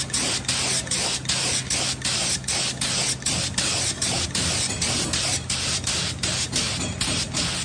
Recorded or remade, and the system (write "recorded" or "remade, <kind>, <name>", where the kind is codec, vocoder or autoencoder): recorded